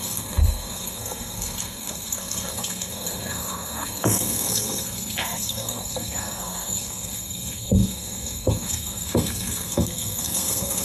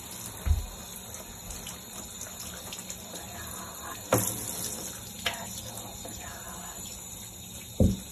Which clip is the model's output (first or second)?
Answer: first